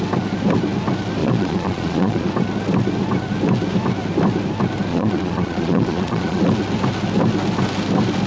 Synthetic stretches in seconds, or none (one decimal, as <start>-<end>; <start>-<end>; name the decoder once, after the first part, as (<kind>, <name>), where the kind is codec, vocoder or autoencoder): 1.2-2.3 (vocoder, Vocos); 4.9-6.4